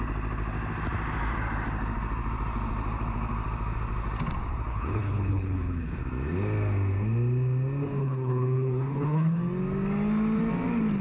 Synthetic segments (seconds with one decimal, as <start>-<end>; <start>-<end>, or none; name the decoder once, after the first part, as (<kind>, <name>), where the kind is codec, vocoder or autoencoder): 4.7-6.0 (codec, HILCodec); 8.0-9.4

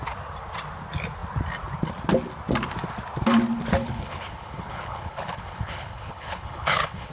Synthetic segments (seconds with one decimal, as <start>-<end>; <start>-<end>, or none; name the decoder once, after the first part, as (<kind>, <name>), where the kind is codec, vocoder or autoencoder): 3.8-7.1 (codec, HILCodec)

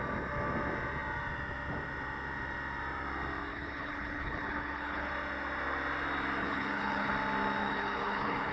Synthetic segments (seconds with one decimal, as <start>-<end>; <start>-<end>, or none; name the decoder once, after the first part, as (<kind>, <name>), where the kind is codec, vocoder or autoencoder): 3.5-5.1 (codec, HILCodec); 6.4-7.1; 7.6-8.5